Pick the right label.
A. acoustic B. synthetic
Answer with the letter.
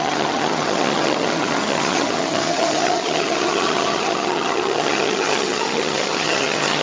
B